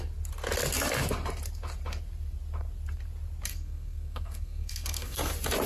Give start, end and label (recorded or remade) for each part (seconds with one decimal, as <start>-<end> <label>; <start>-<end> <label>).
0.0-3.5 recorded; 3.5-5.3 remade; 5.3-5.7 recorded